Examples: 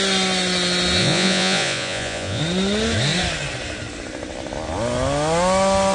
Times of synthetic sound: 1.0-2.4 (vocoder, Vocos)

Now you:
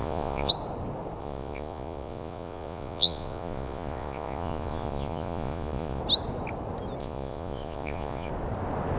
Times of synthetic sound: 0.0-0.5 (vocoder, Vocos); 1.2-6.0; 7.0-8.3

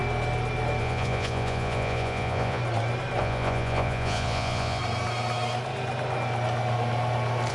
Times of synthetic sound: 0.8-2.6 (vocoder, Vocos); 3.2-4.8